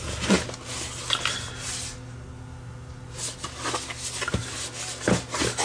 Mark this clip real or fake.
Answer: real